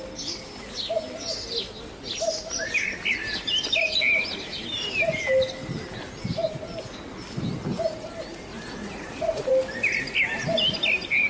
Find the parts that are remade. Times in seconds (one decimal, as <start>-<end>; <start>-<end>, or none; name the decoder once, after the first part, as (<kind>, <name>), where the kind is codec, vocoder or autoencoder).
8.5-9.5 (vocoder, Vocos)